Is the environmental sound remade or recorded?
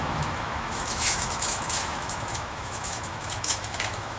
remade